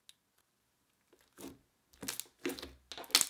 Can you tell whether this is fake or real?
real